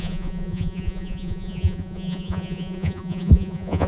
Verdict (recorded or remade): remade